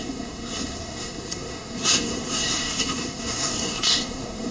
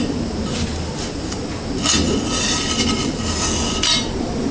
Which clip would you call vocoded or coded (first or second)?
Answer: first